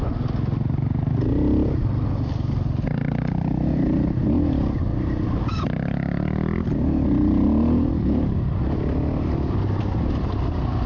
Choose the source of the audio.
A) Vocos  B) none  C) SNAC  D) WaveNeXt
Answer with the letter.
B